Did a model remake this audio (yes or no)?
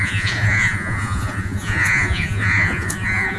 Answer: yes